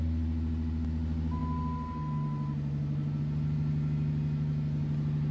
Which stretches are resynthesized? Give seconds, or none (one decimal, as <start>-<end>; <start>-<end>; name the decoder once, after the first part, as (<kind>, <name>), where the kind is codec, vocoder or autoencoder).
none